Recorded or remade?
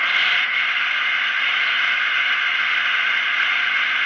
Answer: recorded